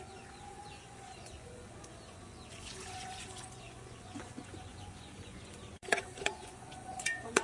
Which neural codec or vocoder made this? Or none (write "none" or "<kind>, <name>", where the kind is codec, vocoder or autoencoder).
vocoder, Vocos